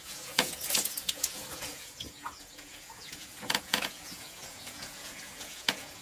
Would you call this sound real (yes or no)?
no